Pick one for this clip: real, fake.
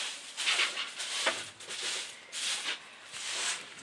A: real